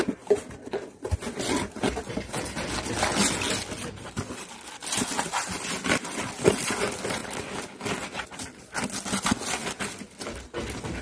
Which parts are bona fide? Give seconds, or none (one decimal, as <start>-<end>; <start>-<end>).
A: 0.0-11.0